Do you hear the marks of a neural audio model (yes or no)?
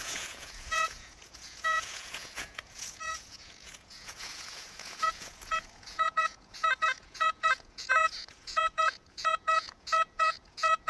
yes